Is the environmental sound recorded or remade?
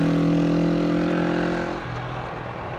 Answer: recorded